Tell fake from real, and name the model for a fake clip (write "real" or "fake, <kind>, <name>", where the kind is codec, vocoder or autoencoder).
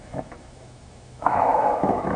fake, autoencoder, DAC-VAE